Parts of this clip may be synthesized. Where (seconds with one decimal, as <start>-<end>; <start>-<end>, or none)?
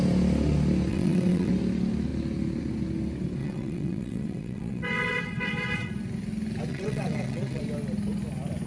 0.9-1.5; 3.4-5.9; 6.7-7.6